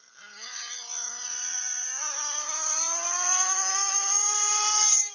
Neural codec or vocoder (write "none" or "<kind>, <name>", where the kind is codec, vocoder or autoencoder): none